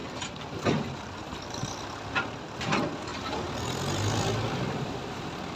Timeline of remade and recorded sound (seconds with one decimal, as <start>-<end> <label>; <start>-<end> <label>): 0.0-3.1 remade; 3.1-4.3 recorded; 4.3-5.6 remade